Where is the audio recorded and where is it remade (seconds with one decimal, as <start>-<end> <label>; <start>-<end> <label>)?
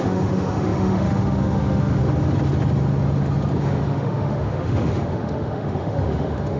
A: 0.0-2.0 remade; 2.0-3.6 recorded; 3.6-6.6 remade